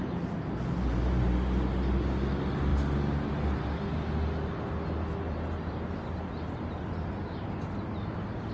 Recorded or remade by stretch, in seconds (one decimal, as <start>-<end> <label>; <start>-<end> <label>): 0.0-8.5 recorded